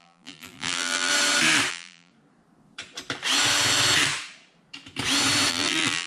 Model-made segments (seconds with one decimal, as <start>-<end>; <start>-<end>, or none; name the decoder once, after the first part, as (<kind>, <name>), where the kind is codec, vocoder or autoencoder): 0.0-1.1 (vocoder, BigVGAN v2); 1.7-2.1; 5.5-6.1

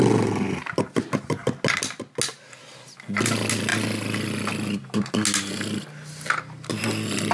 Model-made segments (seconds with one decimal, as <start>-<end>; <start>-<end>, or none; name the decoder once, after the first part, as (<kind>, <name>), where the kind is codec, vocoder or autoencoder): none

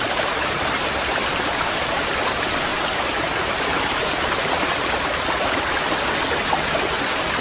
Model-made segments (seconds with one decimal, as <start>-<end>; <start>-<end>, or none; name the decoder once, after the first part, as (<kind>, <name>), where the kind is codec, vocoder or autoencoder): 0.0-7.4 (vocoder, BigVGAN v2)

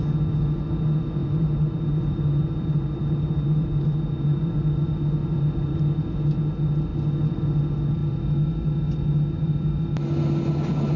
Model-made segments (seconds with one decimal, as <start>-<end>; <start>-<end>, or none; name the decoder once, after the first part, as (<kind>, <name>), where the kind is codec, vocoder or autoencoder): 1.2-4.4 (vocoder, BigVGAN v2); 5.2-5.8